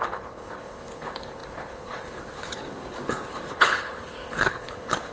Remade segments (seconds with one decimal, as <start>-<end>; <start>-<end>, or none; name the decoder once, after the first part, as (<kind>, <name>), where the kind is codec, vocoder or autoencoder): 0.0-5.1 (codec, HILCodec)